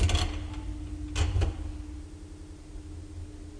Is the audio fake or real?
real